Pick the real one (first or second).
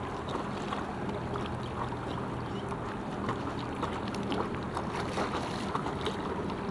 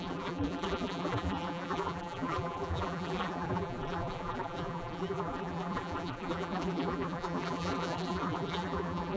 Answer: first